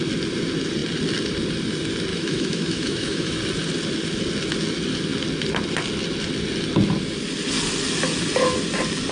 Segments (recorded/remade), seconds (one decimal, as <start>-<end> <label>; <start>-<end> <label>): 0.0-2.1 recorded; 2.1-3.4 remade; 3.4-9.1 recorded